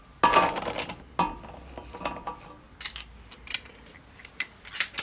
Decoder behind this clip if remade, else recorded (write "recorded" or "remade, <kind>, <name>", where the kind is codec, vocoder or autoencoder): recorded